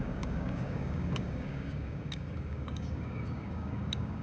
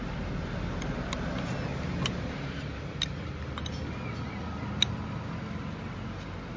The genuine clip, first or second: second